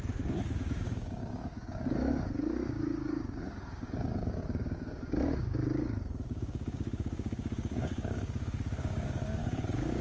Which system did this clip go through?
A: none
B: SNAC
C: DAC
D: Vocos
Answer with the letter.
C